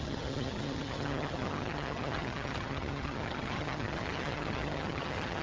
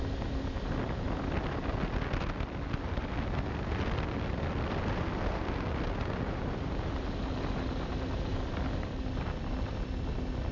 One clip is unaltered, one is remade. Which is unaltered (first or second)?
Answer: second